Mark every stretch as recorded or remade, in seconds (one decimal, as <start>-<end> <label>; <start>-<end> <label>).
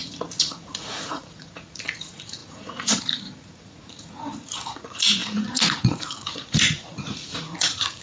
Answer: 0.0-8.0 remade